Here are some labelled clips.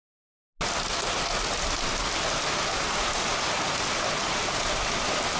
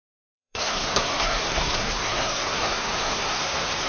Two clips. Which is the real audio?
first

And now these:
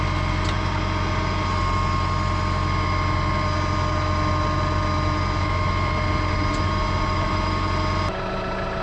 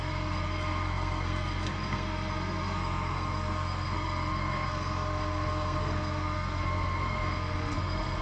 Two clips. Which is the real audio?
first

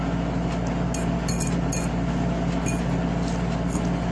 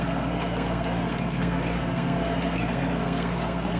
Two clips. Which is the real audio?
first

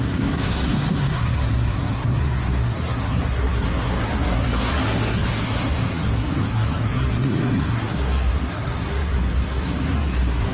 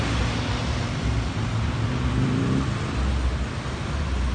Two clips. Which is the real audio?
second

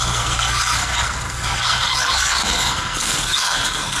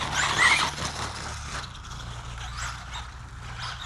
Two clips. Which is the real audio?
second